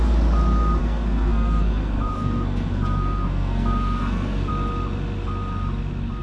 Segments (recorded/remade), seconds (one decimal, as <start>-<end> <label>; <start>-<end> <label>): 0.0-0.8 recorded; 0.8-4.5 remade; 4.5-6.2 recorded